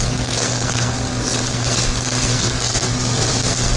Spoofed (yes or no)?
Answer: yes